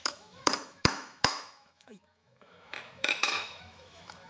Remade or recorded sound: remade